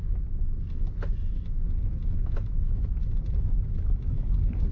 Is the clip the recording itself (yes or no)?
yes